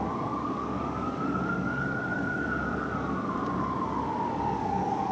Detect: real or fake fake